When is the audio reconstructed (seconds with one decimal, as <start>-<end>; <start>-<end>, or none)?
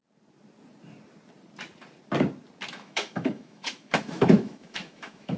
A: 2.7-5.4